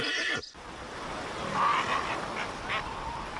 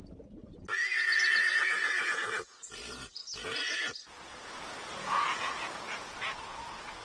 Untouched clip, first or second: first